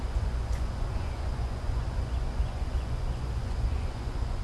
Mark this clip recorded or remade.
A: remade